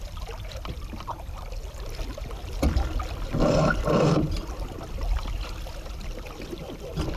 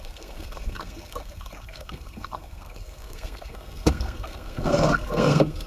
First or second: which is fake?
second